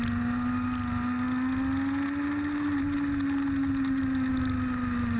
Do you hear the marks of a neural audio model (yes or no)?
no